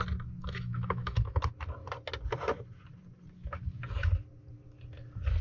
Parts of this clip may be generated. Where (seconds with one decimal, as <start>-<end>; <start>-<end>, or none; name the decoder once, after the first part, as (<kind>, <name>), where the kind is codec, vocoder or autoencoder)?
0.4-1.4 (autoencoder, DAC-VAE)